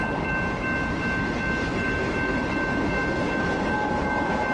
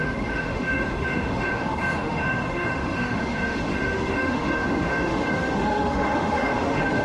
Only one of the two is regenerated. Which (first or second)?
second